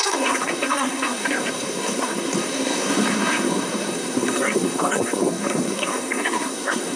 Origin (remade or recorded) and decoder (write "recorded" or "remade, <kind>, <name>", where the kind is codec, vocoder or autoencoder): remade, codec, SNAC